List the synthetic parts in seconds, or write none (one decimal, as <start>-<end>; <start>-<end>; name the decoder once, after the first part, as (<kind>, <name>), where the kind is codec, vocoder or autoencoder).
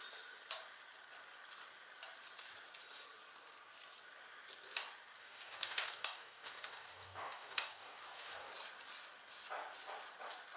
5.2-8.5 (codec, DAC)